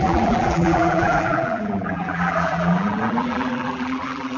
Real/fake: fake